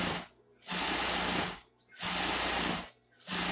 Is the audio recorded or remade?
recorded